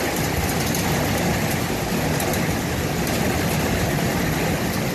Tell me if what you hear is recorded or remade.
recorded